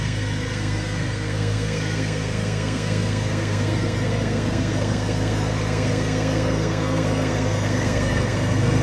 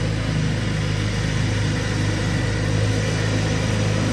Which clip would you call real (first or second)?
second